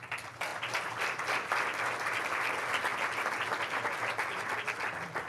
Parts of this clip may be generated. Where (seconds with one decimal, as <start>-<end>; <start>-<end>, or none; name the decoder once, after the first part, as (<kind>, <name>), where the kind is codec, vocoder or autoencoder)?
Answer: none